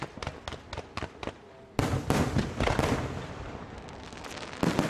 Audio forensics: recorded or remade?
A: recorded